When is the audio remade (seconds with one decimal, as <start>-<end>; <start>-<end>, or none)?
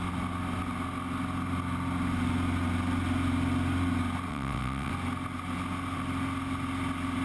4.3-4.9